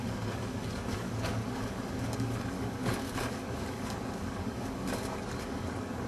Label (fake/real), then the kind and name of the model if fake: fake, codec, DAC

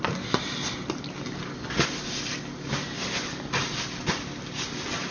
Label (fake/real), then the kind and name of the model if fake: real